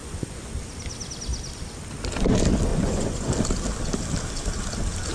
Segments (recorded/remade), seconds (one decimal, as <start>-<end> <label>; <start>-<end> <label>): 0.0-0.5 remade; 0.5-2.7 recorded; 2.7-3.3 remade; 3.3-5.1 recorded